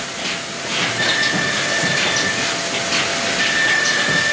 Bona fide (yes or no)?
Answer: yes